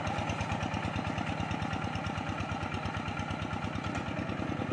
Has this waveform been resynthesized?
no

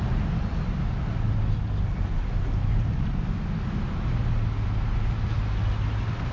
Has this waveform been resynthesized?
no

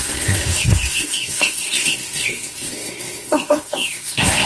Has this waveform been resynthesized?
yes